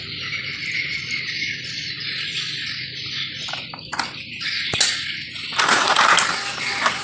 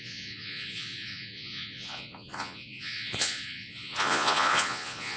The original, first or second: first